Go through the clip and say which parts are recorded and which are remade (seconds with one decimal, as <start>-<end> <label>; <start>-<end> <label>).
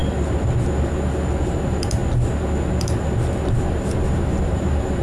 0.0-1.4 recorded; 1.4-2.0 remade; 2.0-2.7 recorded; 2.7-5.0 remade